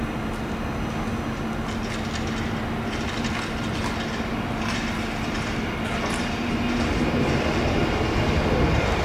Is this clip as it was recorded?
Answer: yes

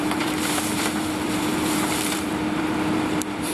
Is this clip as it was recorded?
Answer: no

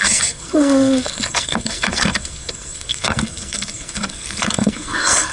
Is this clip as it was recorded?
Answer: no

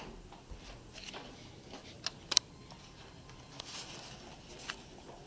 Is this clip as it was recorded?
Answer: yes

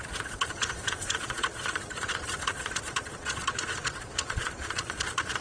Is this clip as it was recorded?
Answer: no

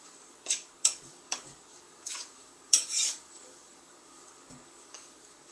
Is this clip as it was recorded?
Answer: no